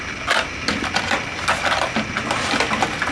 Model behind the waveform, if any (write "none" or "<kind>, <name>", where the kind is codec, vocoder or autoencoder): none